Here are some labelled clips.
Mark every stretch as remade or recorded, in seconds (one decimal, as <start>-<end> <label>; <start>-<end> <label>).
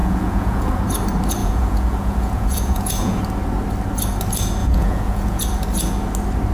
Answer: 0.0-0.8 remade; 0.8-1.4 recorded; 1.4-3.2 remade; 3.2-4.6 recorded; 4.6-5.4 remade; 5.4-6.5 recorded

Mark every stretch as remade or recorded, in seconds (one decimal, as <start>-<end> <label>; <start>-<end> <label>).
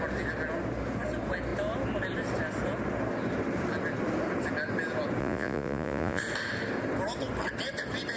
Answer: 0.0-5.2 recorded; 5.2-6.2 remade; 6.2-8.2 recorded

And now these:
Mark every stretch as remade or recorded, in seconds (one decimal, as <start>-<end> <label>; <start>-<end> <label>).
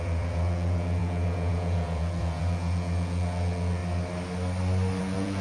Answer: 0.0-3.8 remade; 3.8-5.0 recorded; 5.0-5.4 remade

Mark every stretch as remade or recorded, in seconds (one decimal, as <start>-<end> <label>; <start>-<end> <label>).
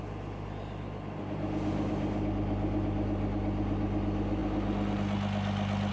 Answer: 0.0-5.9 recorded